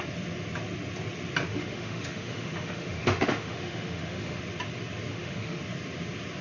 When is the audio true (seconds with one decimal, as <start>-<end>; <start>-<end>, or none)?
0.0-1.5; 4.4-5.1; 5.6-6.4